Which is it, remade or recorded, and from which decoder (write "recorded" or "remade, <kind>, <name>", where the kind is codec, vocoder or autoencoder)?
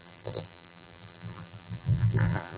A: remade, vocoder, BigVGAN v2